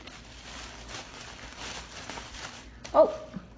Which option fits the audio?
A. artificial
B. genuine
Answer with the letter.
B